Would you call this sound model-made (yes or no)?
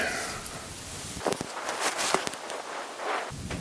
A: no